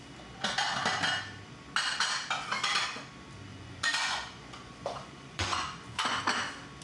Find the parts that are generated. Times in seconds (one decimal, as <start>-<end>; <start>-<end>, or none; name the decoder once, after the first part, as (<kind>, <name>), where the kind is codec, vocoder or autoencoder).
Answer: 3.5-6.2 (vocoder, Vocos)